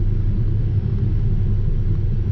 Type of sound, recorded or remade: recorded